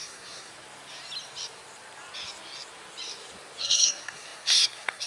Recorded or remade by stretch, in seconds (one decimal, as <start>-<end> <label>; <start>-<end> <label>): 0.0-0.5 remade; 0.5-3.6 recorded; 3.6-5.1 remade